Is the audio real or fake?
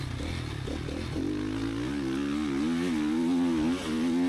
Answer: real